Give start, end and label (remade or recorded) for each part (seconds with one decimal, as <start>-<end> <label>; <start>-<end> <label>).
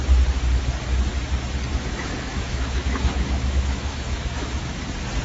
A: 0.0-1.7 recorded; 1.7-4.8 remade; 4.8-5.2 recorded